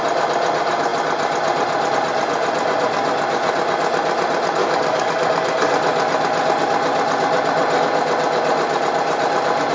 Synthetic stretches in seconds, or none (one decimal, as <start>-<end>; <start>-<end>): 4.6-5.1